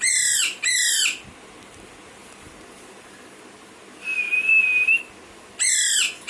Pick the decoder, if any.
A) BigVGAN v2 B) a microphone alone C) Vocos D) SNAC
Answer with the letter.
B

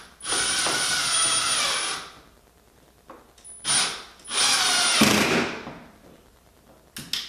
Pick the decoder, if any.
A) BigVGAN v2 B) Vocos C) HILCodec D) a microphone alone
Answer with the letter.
D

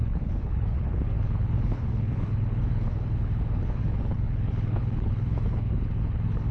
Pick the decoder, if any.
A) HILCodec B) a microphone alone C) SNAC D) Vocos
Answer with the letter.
A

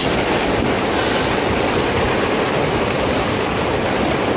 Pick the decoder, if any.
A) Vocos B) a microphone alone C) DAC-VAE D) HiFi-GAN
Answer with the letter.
B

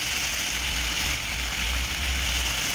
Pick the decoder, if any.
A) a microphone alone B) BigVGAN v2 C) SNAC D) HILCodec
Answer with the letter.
A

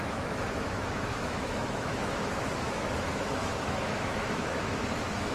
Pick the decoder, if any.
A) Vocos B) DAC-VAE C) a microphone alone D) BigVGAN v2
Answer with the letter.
B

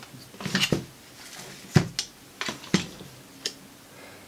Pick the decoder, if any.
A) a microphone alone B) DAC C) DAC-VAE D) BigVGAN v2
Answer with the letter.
A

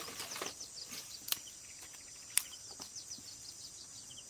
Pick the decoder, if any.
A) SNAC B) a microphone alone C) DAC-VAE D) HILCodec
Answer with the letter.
B